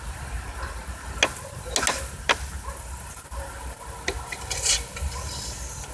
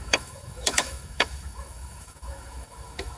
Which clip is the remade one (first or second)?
second